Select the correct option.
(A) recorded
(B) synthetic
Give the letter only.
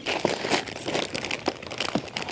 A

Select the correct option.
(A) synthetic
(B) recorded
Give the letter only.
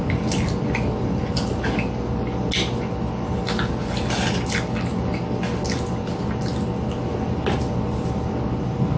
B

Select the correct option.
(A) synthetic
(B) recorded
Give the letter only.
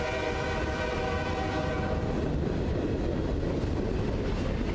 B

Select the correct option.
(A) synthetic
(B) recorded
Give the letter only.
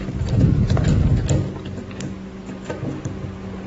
B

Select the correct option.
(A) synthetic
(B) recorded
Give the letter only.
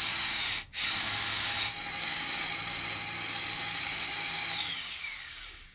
A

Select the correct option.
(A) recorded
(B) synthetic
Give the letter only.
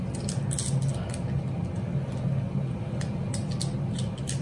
A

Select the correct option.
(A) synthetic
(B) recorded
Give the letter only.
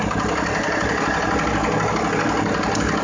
B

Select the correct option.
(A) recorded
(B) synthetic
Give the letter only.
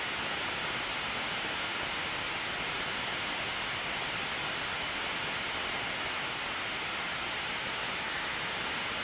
A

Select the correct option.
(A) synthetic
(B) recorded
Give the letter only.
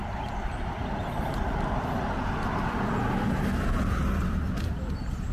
B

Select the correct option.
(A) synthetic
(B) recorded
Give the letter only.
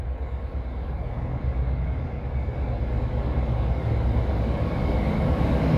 A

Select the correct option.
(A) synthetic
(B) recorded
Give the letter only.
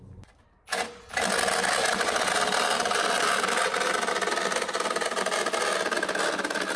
B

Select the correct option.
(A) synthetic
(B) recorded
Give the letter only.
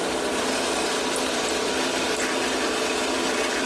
B